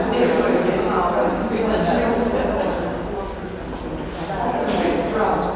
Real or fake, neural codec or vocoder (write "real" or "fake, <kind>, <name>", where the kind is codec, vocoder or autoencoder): real